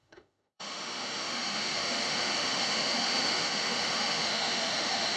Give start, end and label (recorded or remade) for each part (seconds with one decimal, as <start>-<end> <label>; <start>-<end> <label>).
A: 0.0-5.2 remade

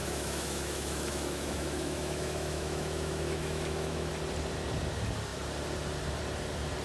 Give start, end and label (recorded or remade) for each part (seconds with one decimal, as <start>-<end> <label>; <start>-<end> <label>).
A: 0.0-4.1 remade; 4.1-6.8 recorded

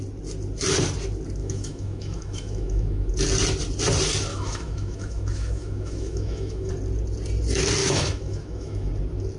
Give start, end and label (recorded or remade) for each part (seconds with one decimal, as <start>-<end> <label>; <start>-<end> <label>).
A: 0.0-1.4 recorded; 1.4-3.1 remade; 3.1-4.3 recorded; 4.3-6.7 remade; 6.7-7.8 recorded; 7.8-8.9 remade; 8.9-9.4 recorded

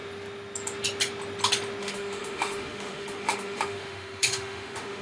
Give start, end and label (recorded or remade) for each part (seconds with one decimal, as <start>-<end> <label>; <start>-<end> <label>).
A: 0.0-1.8 recorded; 1.8-5.0 remade

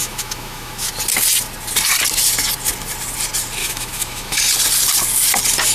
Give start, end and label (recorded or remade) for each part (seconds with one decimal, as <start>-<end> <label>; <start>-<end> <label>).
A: 0.0-0.9 remade; 0.9-3.6 recorded; 3.6-4.4 remade; 4.4-5.7 recorded